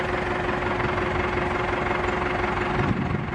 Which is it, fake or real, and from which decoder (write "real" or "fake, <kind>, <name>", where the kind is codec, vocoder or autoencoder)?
real